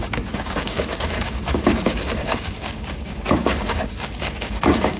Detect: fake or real fake